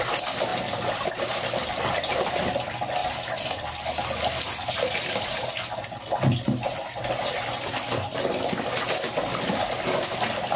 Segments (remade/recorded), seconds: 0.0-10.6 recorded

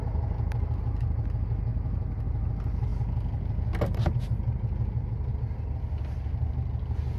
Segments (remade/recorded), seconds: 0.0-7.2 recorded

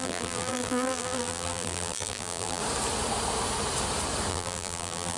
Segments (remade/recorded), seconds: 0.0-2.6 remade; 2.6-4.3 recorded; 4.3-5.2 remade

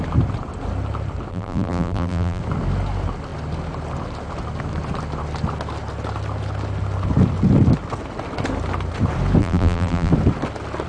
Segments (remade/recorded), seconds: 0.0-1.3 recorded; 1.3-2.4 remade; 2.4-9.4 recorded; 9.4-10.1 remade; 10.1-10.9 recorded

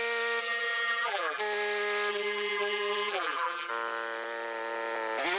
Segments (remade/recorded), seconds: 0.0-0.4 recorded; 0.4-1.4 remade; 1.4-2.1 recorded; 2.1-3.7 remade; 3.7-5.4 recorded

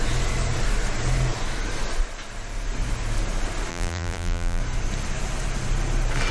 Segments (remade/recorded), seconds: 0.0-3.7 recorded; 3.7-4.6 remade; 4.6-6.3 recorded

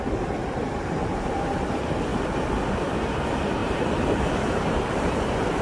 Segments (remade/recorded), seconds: 0.0-0.4 recorded; 0.4-1.2 remade; 1.2-3.6 recorded; 3.6-5.6 remade